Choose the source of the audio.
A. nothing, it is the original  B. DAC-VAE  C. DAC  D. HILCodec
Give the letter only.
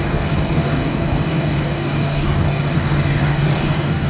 C